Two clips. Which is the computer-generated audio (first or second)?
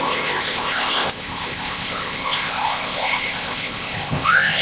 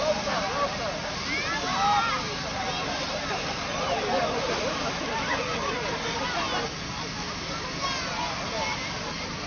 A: first